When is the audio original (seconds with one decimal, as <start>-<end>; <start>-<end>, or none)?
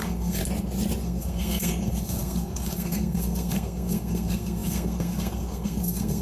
0.4-1.0